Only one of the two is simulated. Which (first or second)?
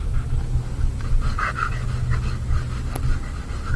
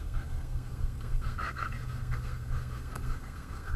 second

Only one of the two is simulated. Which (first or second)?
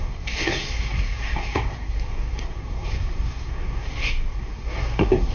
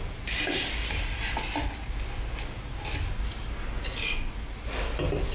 first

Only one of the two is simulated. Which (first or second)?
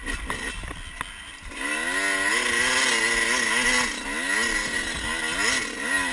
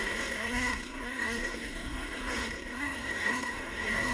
second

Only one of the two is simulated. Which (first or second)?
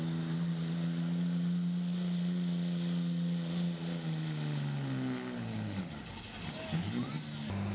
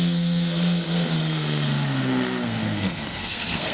second